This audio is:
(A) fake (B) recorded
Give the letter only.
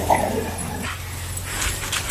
B